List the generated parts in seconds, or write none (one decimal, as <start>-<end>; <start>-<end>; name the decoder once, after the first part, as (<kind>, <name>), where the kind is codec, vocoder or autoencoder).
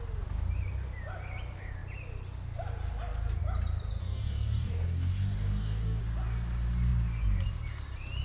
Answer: 4.0-6.0 (codec, DAC)